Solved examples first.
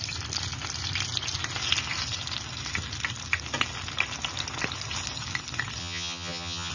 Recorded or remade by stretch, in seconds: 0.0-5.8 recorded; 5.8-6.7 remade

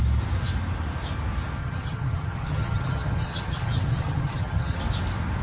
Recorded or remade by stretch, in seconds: 0.0-1.6 recorded; 1.6-4.8 remade; 4.8-5.4 recorded

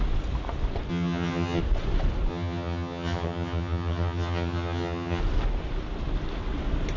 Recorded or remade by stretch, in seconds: 0.0-0.9 recorded; 0.9-1.6 remade; 1.6-2.3 recorded; 2.3-5.2 remade; 5.2-7.0 recorded

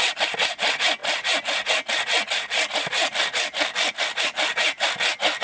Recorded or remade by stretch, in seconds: 0.0-5.4 recorded

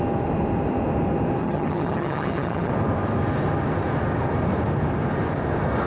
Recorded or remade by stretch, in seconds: 0.0-1.4 recorded; 1.4-2.7 remade; 2.7-5.9 recorded